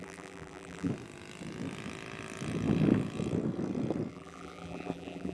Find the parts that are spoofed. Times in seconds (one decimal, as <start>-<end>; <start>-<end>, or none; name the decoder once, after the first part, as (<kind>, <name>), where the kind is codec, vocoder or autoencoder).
0.0-0.9 (vocoder, BigVGAN v2); 4.1-5.3